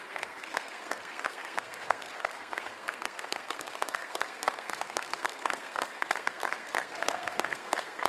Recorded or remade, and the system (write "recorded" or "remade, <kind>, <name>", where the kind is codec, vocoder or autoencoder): remade, codec, SNAC